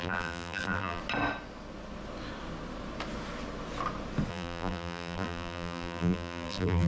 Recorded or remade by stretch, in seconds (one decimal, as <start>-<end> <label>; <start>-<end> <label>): 0.0-1.0 remade; 1.0-4.3 recorded; 4.3-6.9 remade